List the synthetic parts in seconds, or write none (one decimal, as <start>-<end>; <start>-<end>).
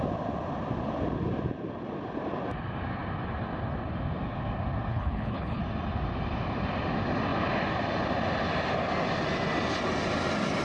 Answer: 4.9-5.6